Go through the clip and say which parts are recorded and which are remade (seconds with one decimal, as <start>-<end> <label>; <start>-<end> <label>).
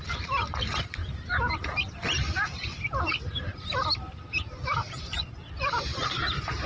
0.0-1.0 remade; 1.0-5.0 recorded; 5.0-6.7 remade